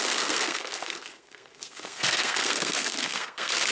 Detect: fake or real fake